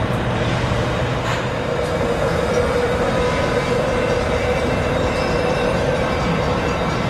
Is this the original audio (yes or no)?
no